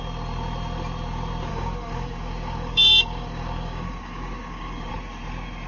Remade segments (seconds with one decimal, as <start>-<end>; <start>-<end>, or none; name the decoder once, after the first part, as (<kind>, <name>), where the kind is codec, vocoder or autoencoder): 1.5-4.9 (codec, DAC)